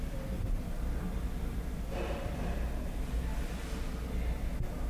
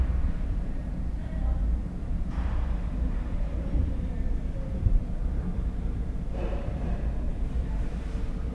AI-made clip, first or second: second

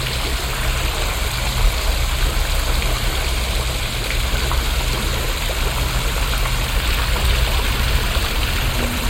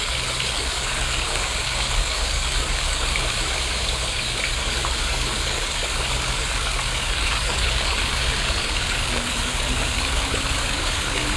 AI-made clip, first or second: second